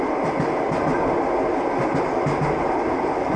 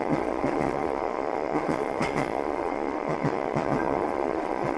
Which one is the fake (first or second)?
second